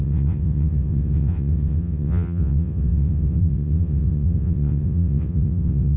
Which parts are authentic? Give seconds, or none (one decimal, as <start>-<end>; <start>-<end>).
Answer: none